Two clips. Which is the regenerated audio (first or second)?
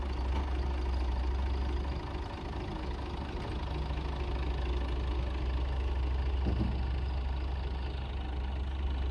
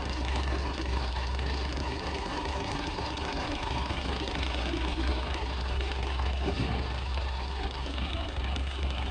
second